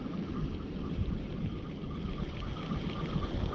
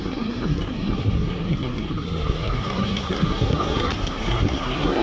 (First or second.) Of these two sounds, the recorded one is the first